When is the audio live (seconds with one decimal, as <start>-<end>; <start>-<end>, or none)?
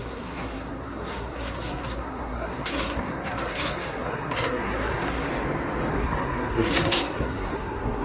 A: 5.3-5.9